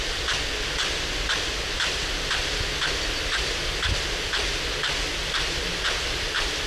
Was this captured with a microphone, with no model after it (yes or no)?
yes